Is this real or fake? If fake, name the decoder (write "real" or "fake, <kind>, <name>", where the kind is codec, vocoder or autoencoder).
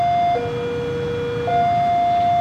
real